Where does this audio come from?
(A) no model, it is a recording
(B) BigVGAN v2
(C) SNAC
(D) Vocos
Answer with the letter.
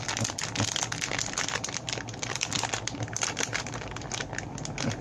A